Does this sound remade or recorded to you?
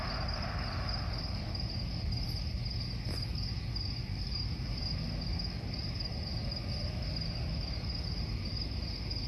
recorded